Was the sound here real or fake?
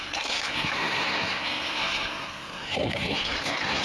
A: fake